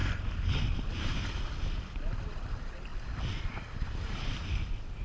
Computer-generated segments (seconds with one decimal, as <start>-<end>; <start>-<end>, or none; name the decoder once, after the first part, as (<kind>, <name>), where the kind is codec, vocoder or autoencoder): 2.3-2.9 (vocoder, BigVGAN v2); 3.4-5.0